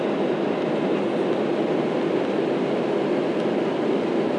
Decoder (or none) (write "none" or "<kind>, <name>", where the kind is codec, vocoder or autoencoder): none